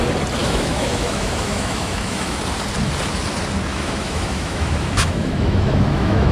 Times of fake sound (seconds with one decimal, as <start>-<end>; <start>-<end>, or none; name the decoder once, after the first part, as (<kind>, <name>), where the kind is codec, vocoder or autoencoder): 0.4-2.4 (autoencoder, DAC-VAE); 3.7-6.3

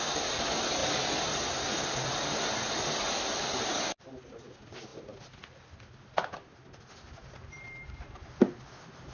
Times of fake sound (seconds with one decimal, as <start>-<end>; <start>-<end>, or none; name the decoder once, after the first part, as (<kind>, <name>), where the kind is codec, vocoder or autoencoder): none

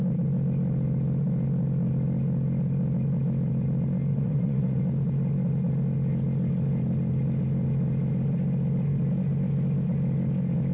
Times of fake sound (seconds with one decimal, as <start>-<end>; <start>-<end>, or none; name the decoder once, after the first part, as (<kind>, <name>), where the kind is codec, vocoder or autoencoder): 4.1-4.8 (vocoder, Vocos)

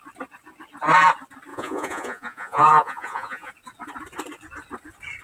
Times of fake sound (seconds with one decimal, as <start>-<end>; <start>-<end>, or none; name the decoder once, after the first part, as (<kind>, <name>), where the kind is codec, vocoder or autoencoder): 1.5-3.5 (vocoder, Vocos)